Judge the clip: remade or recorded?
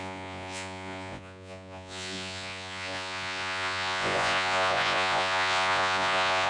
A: remade